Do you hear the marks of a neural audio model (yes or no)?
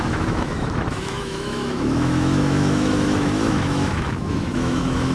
yes